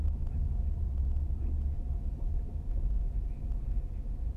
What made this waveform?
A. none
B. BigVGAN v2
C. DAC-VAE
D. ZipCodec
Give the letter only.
A